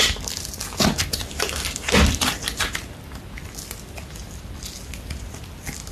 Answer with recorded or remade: recorded